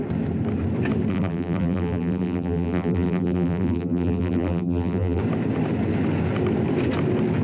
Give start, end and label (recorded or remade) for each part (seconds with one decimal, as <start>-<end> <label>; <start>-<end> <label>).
0.0-1.1 recorded; 1.1-5.2 remade; 5.2-7.4 recorded